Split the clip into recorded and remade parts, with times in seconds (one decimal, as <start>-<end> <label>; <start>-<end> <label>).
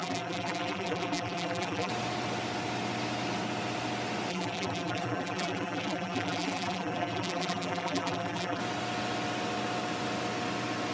0.0-1.9 remade; 1.9-4.3 recorded; 4.3-8.6 remade; 8.6-10.9 recorded